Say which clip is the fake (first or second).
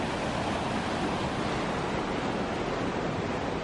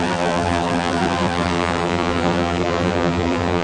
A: second